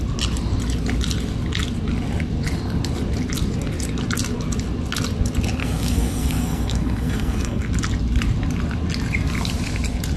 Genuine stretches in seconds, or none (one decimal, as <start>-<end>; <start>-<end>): 0.0-5.6; 7.7-10.2